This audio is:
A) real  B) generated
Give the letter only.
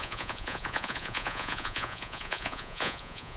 B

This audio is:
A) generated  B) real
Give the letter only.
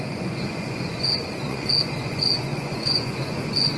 A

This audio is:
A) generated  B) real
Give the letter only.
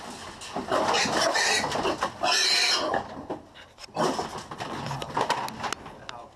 B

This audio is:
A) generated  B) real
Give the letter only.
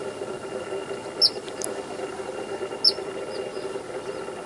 B